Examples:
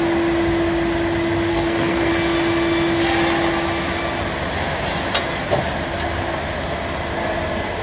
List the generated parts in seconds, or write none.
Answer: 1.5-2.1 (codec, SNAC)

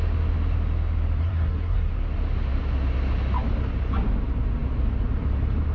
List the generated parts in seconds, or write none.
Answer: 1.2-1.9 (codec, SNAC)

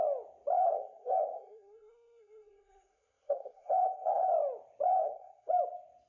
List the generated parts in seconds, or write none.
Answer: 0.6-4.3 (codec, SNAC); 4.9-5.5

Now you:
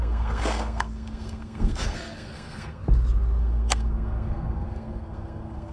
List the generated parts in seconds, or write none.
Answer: 0.0-2.8 (codec, SNAC); 3.4-5.7